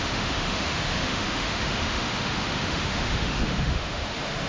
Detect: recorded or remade remade